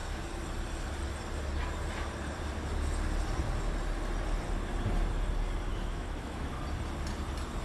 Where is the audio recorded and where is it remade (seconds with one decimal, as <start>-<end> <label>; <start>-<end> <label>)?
0.0-5.7 recorded; 5.7-6.6 remade; 6.6-7.6 recorded